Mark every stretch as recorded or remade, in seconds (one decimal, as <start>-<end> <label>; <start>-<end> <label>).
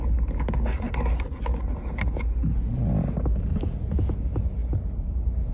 0.0-5.5 recorded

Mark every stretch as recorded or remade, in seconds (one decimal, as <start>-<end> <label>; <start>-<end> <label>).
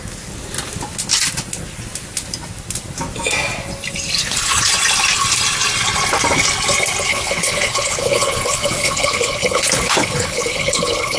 0.0-4.2 recorded; 4.2-4.7 remade; 4.7-7.1 recorded; 7.1-11.2 remade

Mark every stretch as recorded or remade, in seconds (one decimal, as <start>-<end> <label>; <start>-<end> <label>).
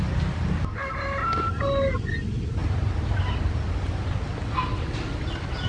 0.0-5.7 recorded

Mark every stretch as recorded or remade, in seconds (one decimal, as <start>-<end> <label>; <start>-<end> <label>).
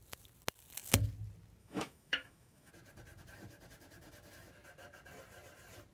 0.0-1.6 recorded; 1.6-2.7 remade; 2.7-5.9 recorded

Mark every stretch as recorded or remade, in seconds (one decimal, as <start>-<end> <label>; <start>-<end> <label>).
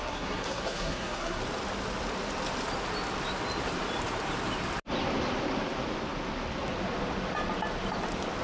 0.0-1.4 remade; 1.4-8.4 recorded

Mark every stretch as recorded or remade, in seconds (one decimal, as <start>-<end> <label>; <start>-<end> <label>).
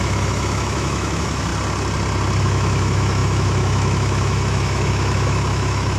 0.0-1.5 remade; 1.5-2.4 recorded; 2.4-6.0 remade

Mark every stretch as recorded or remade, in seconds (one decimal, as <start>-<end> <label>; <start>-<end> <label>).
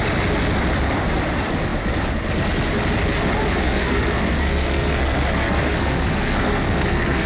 0.0-3.6 recorded; 3.6-7.3 remade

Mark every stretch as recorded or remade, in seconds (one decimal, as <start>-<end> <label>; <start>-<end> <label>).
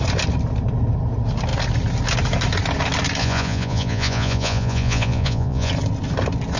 0.0-3.2 recorded; 3.2-5.7 remade; 5.7-6.6 recorded